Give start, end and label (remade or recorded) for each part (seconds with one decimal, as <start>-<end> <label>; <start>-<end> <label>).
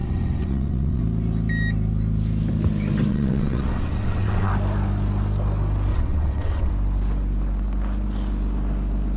0.0-1.0 remade; 1.0-3.1 recorded; 3.1-4.5 remade; 4.5-5.9 recorded; 5.9-6.7 remade; 6.7-9.2 recorded